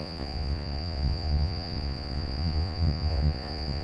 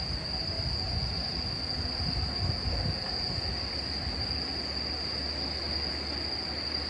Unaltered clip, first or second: second